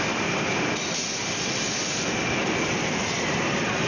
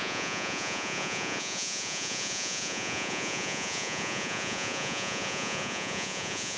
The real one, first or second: first